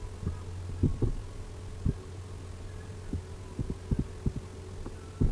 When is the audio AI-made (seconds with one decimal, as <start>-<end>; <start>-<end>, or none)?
none